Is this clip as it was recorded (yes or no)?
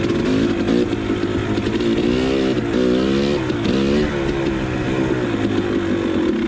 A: yes